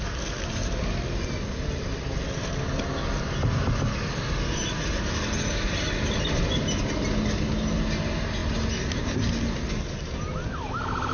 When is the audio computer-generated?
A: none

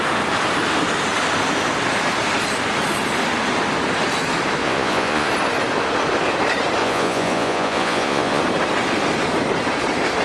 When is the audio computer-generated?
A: 4.6-5.3 (vocoder, Vocos); 6.8-8.4

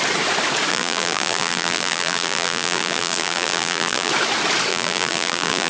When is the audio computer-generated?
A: 0.7-4.1 (vocoder, BigVGAN v2); 4.7-5.7

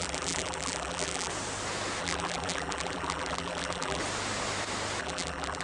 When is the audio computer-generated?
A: 0.0-1.3 (vocoder, BigVGAN v2); 2.0-4.0; 5.0-5.6